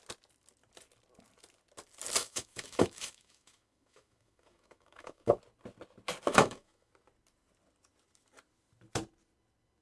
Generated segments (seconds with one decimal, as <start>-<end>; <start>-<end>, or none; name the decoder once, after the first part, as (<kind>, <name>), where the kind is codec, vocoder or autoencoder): 2.2-5.3 (autoencoder, DAC-VAE); 6.3-6.9